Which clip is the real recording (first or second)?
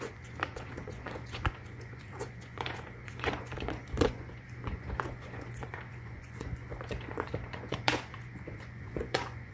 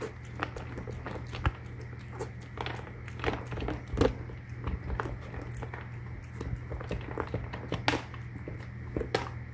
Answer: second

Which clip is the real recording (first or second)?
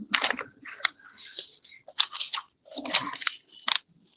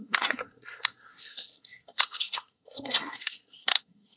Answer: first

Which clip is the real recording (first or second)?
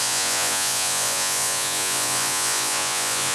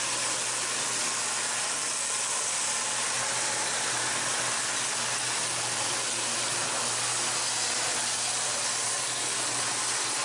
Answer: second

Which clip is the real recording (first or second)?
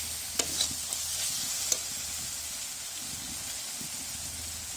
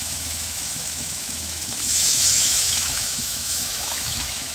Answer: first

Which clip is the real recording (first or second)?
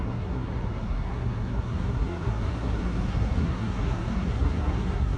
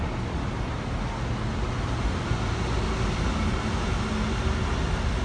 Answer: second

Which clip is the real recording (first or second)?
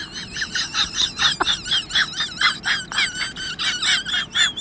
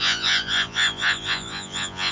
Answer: first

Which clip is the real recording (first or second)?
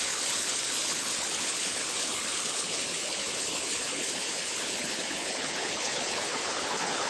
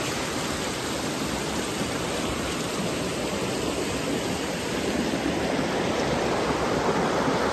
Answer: second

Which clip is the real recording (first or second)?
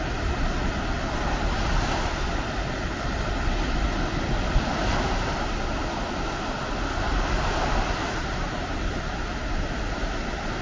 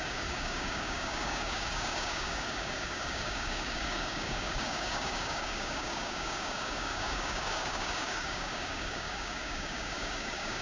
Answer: first